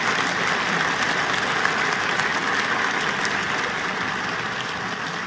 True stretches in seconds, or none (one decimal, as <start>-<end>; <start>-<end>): 0.0-5.3